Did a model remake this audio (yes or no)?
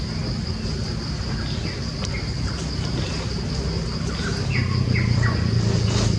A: no